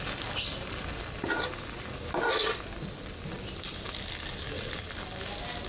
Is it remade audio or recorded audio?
recorded